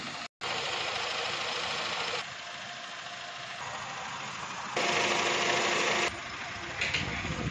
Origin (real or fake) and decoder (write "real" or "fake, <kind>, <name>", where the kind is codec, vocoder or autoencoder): real